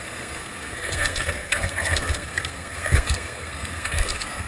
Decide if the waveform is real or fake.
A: fake